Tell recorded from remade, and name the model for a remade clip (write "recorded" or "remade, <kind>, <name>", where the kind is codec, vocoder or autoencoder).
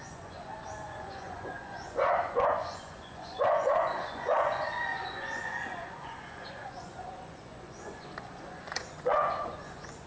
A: remade, vocoder, Vocos